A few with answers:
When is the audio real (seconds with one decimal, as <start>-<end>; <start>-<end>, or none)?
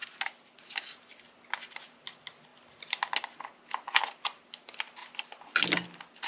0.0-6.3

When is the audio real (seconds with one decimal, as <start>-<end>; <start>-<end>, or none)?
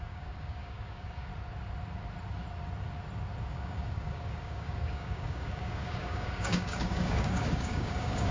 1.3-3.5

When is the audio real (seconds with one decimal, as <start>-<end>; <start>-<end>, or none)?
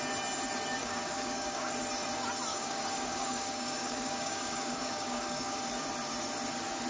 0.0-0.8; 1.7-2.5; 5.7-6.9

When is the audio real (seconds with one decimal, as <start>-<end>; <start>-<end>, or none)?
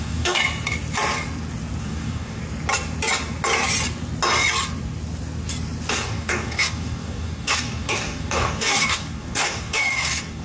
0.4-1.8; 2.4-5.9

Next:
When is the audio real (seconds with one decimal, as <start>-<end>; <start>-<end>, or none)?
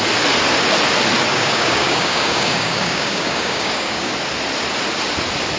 0.0-1.3; 4.1-5.6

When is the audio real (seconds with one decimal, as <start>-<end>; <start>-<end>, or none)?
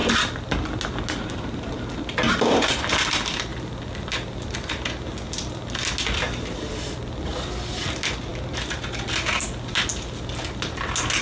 0.0-11.2